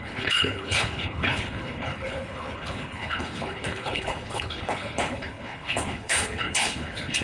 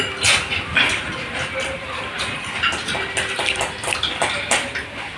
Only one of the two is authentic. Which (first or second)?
second